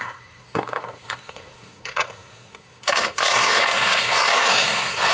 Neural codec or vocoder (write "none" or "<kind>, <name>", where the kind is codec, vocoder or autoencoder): codec, SNAC